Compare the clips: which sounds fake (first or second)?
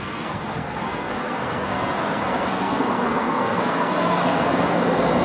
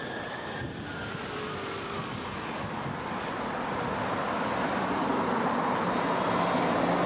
first